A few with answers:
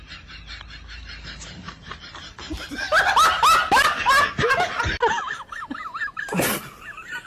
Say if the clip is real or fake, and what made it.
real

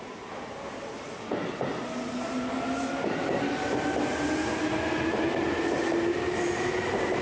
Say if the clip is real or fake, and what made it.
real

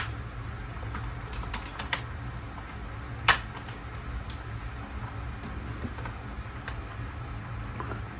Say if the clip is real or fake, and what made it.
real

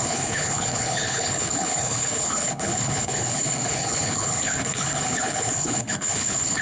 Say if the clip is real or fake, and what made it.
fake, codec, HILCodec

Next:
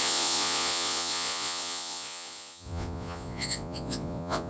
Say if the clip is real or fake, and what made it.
fake, vocoder, Vocos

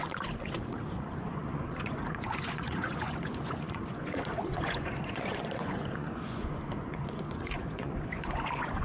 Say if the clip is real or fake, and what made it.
fake, vocoder, Vocos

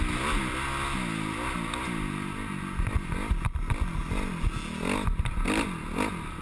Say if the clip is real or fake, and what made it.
real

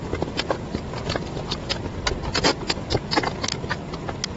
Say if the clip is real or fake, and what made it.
real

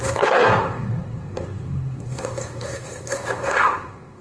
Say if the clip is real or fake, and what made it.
fake, codec, SNAC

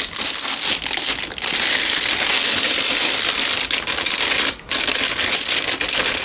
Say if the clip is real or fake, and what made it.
real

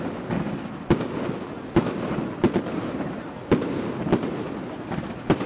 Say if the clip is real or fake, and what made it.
real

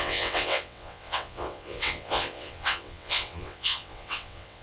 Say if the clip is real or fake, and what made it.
fake, vocoder, WaveNeXt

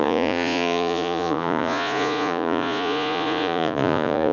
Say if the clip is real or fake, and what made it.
fake, vocoder, Vocos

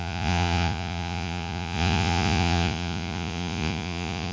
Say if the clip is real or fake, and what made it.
fake, vocoder, Vocos